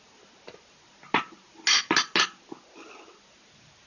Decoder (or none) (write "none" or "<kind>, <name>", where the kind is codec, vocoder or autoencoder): none